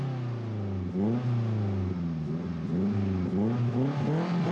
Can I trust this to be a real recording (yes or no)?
yes